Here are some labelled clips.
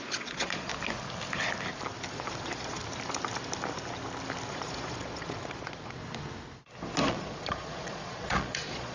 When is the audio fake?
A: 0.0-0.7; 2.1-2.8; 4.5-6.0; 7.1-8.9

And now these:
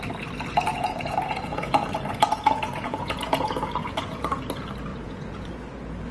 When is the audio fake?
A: 0.7-4.4; 4.9-5.5

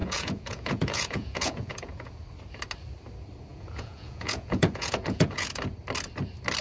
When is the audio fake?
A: 0.0-2.2; 3.5-5.6

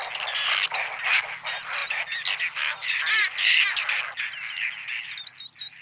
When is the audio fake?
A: none